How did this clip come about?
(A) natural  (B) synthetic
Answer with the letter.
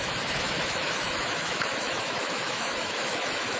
B